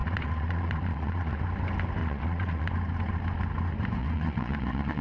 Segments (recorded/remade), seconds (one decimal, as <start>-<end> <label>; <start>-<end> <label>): 0.0-1.4 remade; 1.4-2.0 recorded; 2.0-2.7 remade; 2.7-4.0 recorded; 4.0-5.0 remade